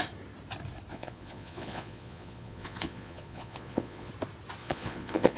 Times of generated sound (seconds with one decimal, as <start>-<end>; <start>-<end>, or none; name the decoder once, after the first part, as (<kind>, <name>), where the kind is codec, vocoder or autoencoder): 0.9-4.1 (vocoder, Vocos); 4.6-5.4